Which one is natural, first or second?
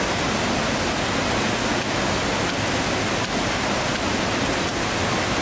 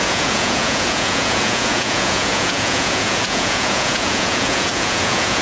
first